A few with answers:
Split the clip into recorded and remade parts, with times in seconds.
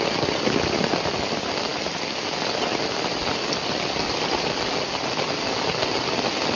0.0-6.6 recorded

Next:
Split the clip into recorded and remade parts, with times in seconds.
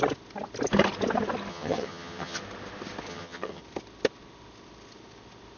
0.0-1.5 recorded; 1.5-2.4 remade; 2.4-3.1 recorded; 3.1-3.6 remade; 3.6-5.6 recorded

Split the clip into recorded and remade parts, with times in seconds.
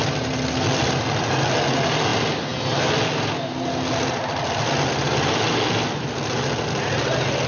0.0-7.5 recorded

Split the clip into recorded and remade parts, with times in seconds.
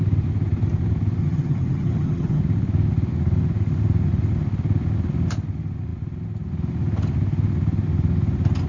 0.0-1.2 recorded; 1.2-2.4 remade; 2.4-8.7 recorded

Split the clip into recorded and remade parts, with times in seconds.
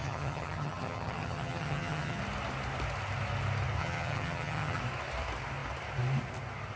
0.0-2.2 remade; 2.2-3.8 recorded; 3.8-4.8 remade; 4.8-6.8 recorded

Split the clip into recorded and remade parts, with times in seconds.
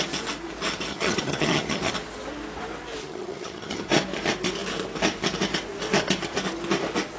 0.0-0.9 recorded; 0.9-1.9 remade; 1.9-3.0 recorded; 3.0-3.9 remade; 3.9-7.2 recorded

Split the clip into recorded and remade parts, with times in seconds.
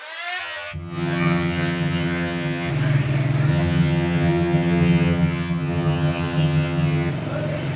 0.0-0.4 recorded; 0.4-2.7 remade; 2.7-3.5 recorded; 3.5-7.1 remade; 7.1-7.8 recorded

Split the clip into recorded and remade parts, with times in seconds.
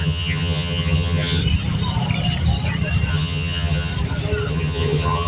0.0-1.4 remade; 1.4-3.1 recorded; 3.1-3.9 remade; 3.9-4.5 recorded; 4.5-5.3 remade